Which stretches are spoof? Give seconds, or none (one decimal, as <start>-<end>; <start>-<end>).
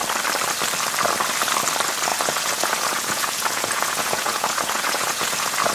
2.1-5.7